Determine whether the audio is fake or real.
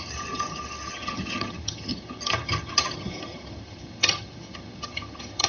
fake